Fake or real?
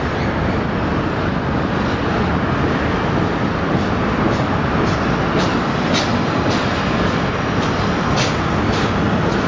real